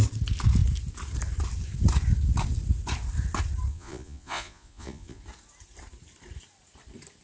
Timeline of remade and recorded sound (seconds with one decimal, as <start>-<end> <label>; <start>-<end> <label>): 0.0-3.7 recorded; 3.7-5.2 remade; 5.2-7.2 recorded